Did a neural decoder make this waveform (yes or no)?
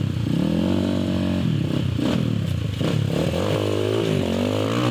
no